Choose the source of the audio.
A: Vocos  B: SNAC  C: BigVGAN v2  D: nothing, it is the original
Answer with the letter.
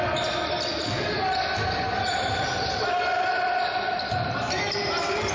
D